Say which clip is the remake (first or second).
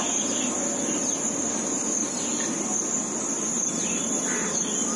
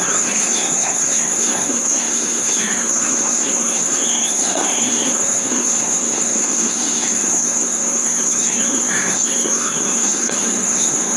second